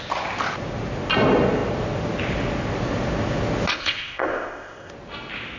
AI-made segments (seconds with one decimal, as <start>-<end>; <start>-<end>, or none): 3.7-4.9